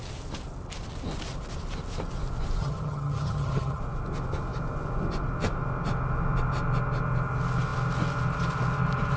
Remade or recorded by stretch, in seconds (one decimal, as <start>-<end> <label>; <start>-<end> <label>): 0.0-2.6 recorded; 2.6-3.8 remade; 3.8-9.2 recorded